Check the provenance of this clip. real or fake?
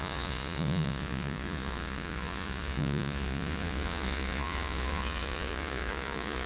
fake